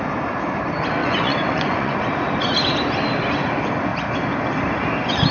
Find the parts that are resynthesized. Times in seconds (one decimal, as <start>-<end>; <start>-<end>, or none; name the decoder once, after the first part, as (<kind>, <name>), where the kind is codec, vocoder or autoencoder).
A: 1.0-2.0 (vocoder, Vocos)